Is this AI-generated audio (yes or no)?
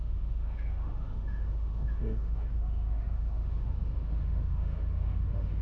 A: yes